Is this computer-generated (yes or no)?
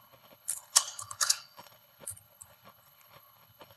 yes